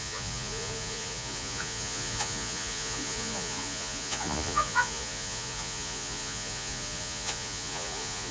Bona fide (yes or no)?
no